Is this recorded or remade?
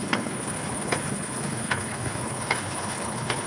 remade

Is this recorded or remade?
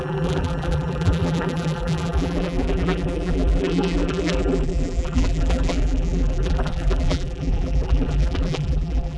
remade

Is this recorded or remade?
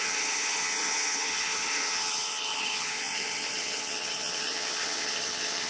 remade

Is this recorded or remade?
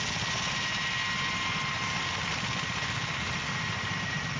recorded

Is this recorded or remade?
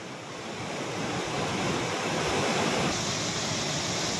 recorded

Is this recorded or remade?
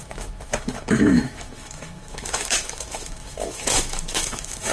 remade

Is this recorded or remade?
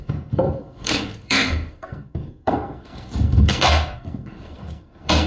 remade